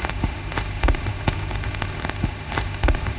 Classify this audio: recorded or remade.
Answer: remade